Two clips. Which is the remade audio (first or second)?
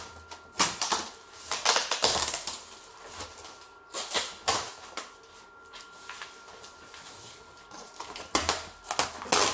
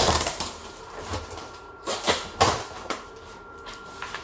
second